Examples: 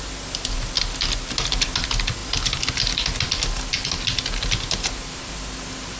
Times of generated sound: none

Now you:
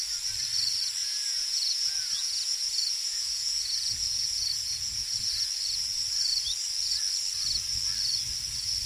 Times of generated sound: 1.0-5.5 (vocoder, Vocos)

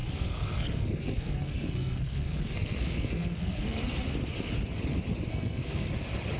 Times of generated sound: 0.0-3.8 (codec, SNAC); 5.3-5.9

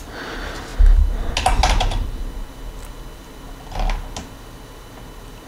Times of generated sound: none

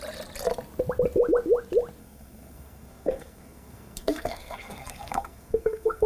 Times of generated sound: 2.0-6.1 (codec, SNAC)

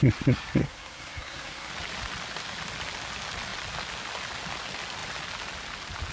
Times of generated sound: 0.6-1.7 (codec, SNAC)

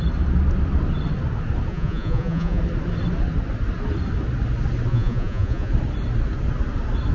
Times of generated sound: 1.7-2.6 (vocoder, Vocos); 4.9-5.7

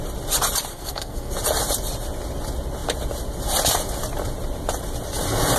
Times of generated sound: 0.7-1.3 (codec, SNAC)